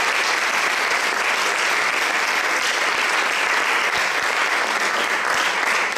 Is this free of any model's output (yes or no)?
yes